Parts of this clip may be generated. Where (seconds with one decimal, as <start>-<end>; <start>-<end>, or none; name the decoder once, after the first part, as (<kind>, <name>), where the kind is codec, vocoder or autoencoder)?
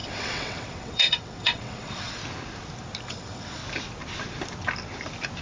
0.0-2.2 (vocoder, WaveNeXt); 3.0-3.6